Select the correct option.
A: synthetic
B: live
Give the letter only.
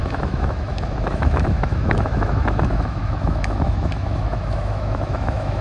A